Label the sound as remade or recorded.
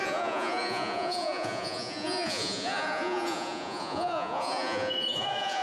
remade